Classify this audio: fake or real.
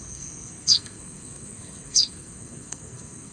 fake